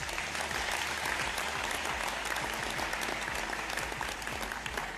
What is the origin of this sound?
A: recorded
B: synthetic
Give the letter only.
A